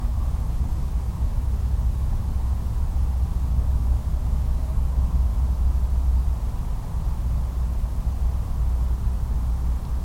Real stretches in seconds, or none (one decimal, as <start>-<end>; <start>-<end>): 2.2-3.5; 5.3-10.0